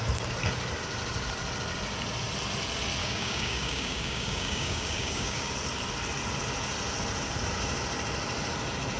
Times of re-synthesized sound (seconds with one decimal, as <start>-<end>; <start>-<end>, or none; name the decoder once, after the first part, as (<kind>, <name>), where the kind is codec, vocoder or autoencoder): 3.0-5.5 (codec, DAC)